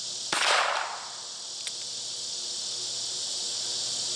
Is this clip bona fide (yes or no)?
yes